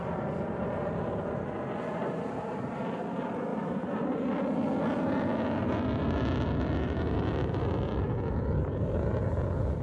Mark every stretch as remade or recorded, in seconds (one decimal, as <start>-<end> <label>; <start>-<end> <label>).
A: 0.0-2.0 recorded; 2.0-2.8 remade; 2.8-3.5 recorded; 3.5-4.1 remade; 4.1-9.8 recorded